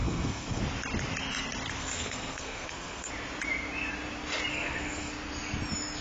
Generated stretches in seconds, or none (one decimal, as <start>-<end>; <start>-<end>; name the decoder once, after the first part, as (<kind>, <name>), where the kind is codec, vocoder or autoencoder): 0.0-0.6 (codec, SNAC); 1.8-3.1; 4.5-5.1